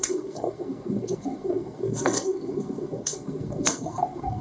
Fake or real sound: fake